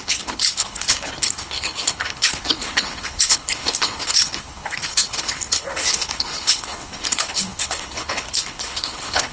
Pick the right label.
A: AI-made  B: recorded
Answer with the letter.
A